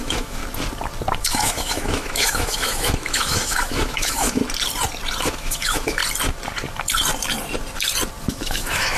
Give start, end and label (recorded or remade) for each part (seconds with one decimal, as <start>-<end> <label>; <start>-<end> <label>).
0.0-0.4 remade; 0.4-1.2 recorded; 1.2-4.4 remade; 4.4-5.2 recorded; 5.2-6.0 remade; 6.0-8.2 recorded; 8.2-9.0 remade